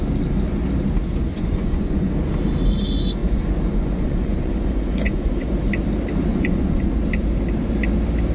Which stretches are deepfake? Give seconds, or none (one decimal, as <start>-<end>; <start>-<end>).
1.3-2.1; 3.2-5.5; 6.3-6.9